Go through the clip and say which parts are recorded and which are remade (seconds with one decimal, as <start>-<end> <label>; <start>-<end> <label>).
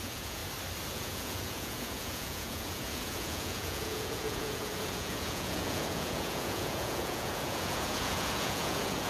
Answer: 0.0-0.4 remade; 0.4-0.9 recorded; 0.9-9.1 remade